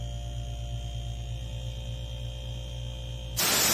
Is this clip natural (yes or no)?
yes